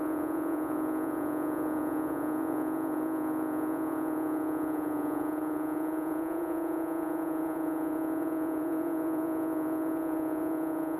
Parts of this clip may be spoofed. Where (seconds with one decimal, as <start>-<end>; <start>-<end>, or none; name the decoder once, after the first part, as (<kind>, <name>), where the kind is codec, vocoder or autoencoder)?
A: 0.0-11.0 (vocoder, Vocos)

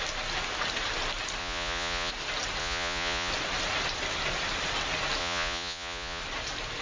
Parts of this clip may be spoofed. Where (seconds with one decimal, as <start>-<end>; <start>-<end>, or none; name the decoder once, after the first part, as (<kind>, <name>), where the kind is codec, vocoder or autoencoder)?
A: 1.4-2.1 (vocoder, Vocos); 2.6-3.3; 5.2-6.2

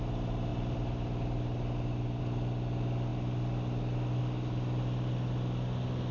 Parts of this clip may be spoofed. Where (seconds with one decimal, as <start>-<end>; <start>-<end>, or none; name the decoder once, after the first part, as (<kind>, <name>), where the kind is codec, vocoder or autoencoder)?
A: none